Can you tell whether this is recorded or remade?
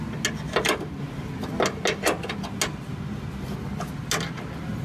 recorded